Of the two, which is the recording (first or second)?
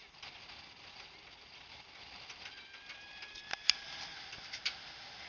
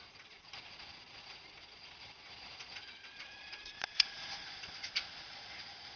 first